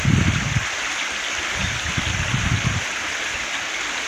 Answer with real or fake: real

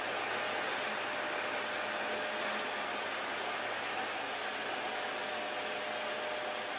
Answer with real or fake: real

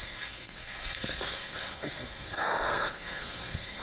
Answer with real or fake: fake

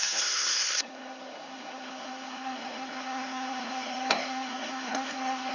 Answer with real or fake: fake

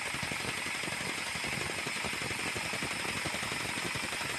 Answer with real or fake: real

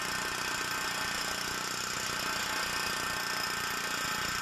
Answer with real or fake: real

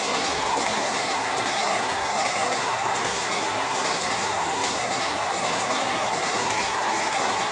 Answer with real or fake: fake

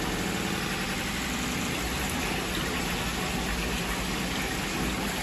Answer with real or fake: real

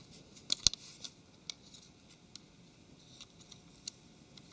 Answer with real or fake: real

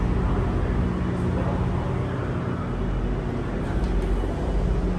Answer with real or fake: real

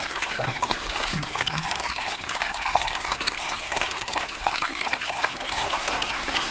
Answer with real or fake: fake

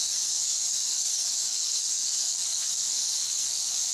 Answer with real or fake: fake